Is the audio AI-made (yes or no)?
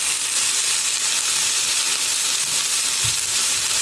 no